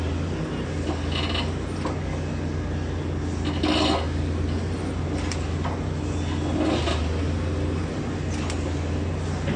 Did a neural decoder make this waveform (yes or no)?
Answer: no